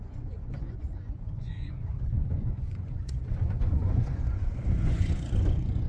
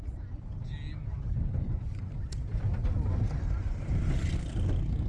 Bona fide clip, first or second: second